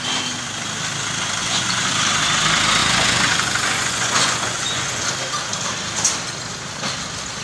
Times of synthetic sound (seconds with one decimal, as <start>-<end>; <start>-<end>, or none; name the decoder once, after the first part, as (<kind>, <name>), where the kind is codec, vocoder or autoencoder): 1.4-1.9 (vocoder, Vocos); 2.8-5.0